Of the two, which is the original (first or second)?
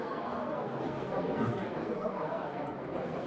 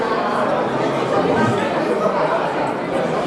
second